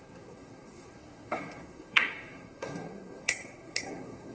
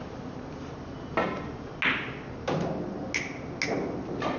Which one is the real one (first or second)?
second